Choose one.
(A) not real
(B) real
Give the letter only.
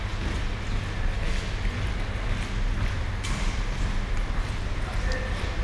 B